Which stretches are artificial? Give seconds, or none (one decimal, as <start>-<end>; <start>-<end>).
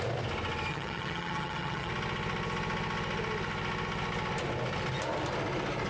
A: 0.7-1.9